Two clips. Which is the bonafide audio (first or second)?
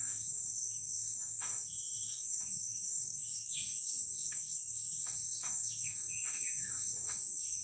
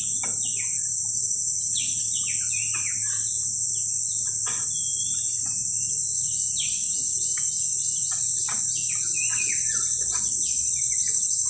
second